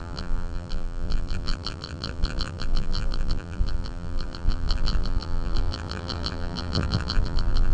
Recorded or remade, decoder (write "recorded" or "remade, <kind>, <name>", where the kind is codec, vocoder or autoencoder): remade, vocoder, BigVGAN v2